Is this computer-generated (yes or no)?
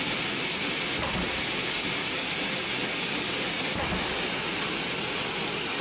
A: no